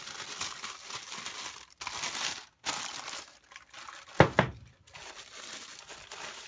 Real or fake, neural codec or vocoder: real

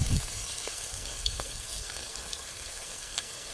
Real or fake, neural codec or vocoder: fake, codec, SNAC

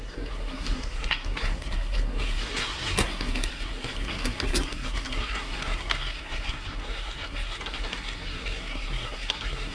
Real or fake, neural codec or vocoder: fake, codec, SNAC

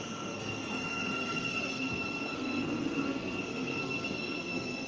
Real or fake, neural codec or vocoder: fake, codec, SNAC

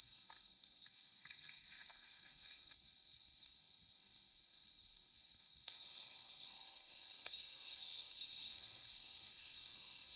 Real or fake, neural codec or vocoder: fake, codec, SNAC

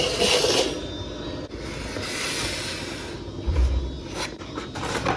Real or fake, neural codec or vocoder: real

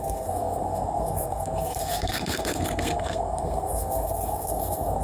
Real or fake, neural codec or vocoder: fake, codec, SNAC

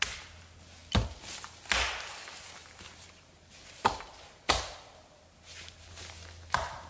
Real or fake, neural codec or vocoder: real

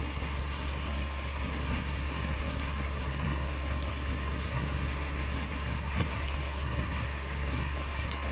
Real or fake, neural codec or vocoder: fake, codec, SNAC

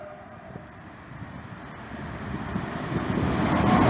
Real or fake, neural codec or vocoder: real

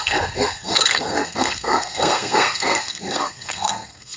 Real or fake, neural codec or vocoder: fake, codec, SNAC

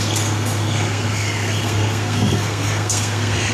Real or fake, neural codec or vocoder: fake, codec, SNAC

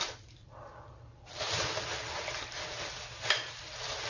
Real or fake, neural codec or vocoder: real